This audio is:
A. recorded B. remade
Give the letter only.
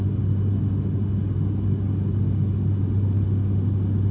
A